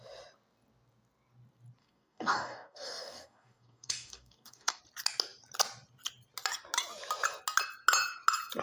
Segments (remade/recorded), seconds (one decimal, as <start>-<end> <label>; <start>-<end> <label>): 0.0-1.8 recorded; 1.8-4.8 remade; 4.8-8.6 recorded